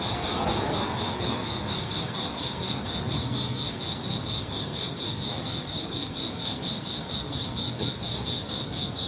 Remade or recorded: remade